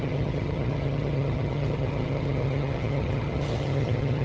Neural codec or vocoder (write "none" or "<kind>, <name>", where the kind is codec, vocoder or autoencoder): vocoder, HiFi-GAN